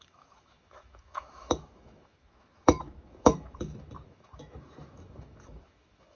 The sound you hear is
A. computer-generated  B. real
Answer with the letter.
A